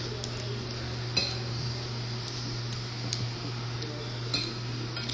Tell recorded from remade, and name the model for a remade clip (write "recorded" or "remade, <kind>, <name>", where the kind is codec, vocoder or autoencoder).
recorded